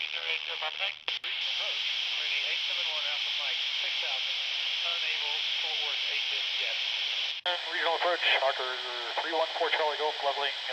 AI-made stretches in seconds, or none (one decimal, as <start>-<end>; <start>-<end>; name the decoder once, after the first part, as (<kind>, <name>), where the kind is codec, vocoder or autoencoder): 4.9-7.3 (vocoder, BigVGAN v2)